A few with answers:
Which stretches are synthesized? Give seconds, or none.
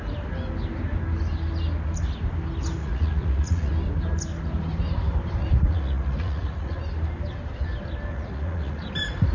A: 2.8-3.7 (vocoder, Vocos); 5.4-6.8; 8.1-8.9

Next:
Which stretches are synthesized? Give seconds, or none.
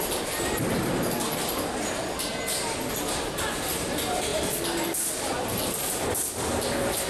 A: none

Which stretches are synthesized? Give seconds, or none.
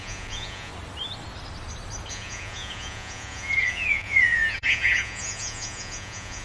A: 0.0-0.7 (vocoder, Vocos); 2.1-6.4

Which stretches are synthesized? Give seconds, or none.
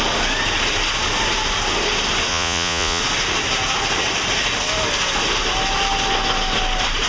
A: 2.3-3.0 (vocoder, Vocos)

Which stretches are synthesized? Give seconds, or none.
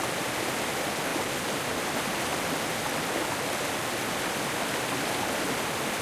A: none